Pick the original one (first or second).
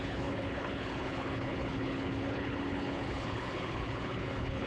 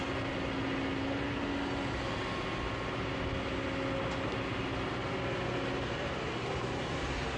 second